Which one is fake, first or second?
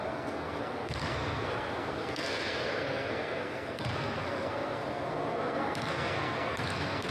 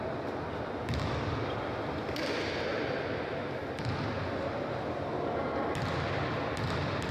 first